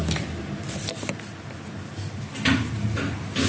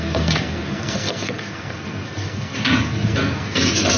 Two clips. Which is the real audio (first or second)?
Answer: first